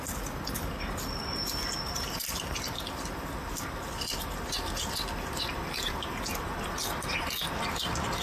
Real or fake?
real